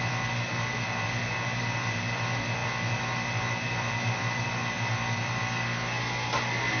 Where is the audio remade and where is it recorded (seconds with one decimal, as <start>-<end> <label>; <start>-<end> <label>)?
0.0-6.8 recorded